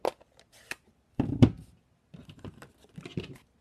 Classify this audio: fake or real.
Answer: real